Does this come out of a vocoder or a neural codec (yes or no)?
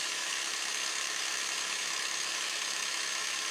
yes